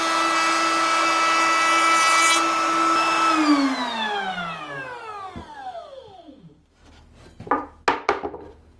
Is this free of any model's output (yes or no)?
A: yes